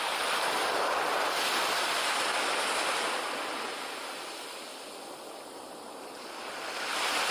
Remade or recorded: remade